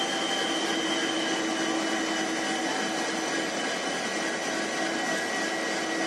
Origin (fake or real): real